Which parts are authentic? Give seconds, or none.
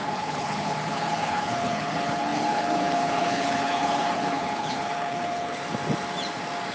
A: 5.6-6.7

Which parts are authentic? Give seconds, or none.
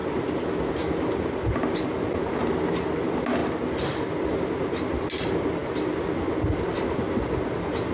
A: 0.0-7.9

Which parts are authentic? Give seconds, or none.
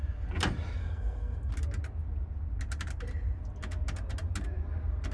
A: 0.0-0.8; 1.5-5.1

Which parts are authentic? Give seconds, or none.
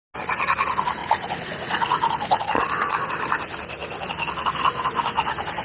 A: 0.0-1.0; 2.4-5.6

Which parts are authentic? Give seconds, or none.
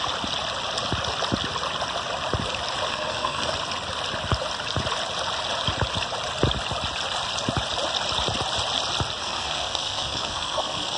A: 0.0-2.9; 3.5-9.2